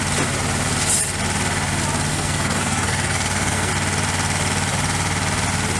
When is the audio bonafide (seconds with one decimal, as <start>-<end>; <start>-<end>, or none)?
0.0-2.1; 3.7-5.8